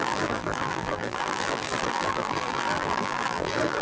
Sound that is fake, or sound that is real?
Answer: fake